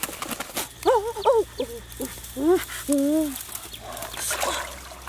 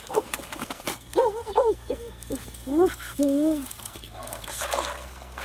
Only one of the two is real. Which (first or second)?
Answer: first